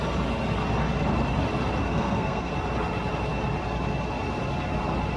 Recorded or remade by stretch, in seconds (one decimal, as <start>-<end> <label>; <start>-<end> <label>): 0.0-1.8 recorded; 1.8-2.5 remade; 2.5-5.2 recorded